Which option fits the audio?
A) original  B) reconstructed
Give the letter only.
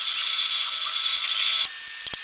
A